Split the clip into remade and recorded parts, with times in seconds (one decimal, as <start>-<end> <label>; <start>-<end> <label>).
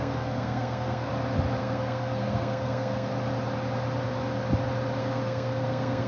0.0-1.1 remade; 1.1-1.6 recorded; 1.6-3.1 remade; 3.1-5.0 recorded; 5.0-6.1 remade